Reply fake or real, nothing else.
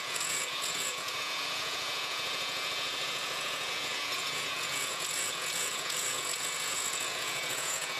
fake